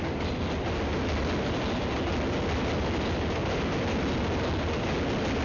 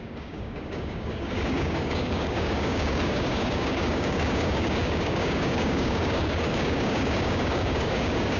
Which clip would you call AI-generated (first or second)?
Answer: second